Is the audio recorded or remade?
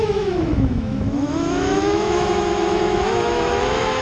remade